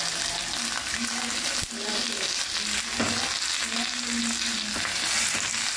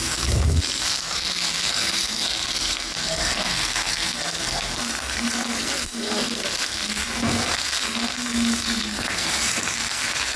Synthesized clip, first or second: second